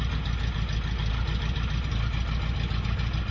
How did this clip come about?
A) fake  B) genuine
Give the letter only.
B